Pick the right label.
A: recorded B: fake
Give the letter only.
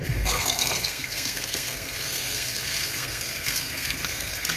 B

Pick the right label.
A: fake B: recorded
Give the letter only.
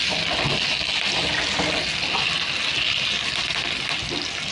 B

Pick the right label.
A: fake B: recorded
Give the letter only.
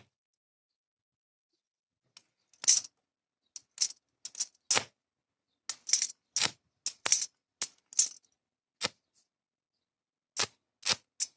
B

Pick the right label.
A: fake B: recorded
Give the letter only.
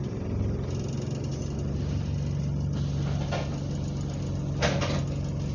B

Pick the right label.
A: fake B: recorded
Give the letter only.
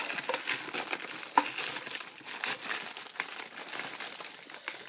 B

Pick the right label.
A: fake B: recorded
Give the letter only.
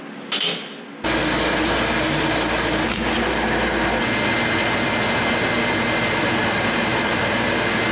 B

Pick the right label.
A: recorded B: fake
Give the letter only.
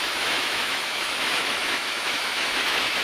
B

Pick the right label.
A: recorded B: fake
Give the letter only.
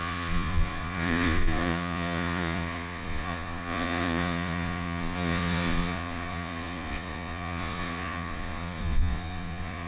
B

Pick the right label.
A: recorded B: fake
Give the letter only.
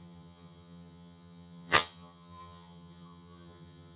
B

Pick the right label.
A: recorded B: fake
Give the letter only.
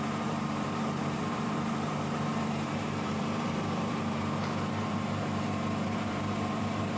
B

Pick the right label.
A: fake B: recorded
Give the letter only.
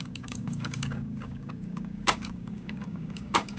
A